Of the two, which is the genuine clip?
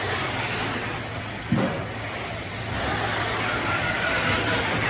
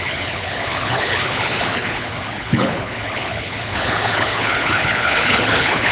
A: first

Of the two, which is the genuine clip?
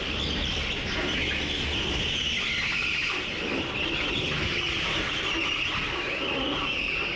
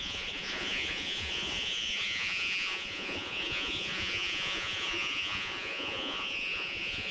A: first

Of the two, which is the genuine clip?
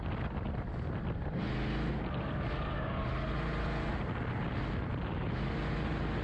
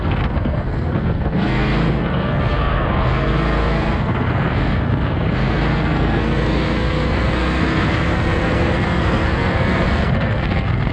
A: first